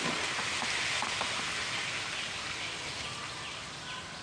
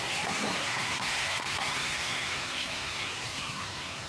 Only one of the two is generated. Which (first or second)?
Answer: second